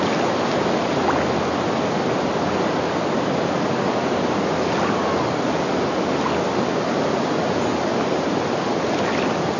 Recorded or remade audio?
recorded